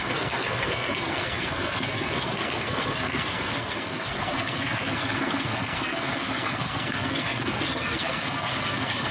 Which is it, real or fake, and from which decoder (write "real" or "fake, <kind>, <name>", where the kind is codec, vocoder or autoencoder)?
fake, codec, SNAC